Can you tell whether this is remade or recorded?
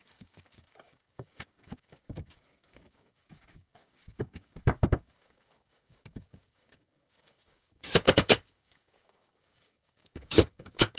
remade